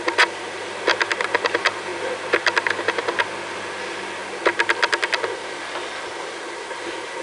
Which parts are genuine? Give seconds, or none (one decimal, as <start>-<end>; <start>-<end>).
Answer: 0.0-7.2